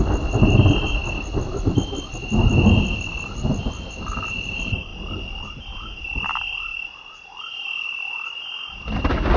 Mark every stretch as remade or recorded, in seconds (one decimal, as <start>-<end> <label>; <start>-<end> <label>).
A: 0.0-4.9 recorded; 4.9-5.6 remade; 5.6-6.7 recorded; 6.7-7.3 remade; 7.3-9.4 recorded